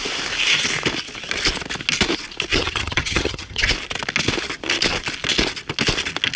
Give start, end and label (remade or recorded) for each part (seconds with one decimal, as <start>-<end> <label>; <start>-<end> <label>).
0.0-2.5 recorded; 2.5-3.7 remade; 3.7-6.4 recorded